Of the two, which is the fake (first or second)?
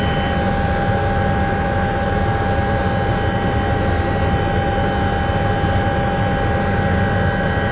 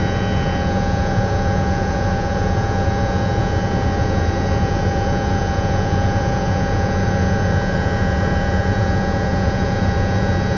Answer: second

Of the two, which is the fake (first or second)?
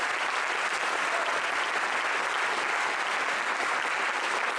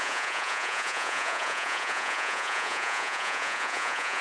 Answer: second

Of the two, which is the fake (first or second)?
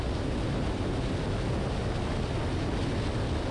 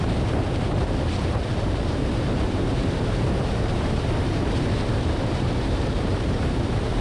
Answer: second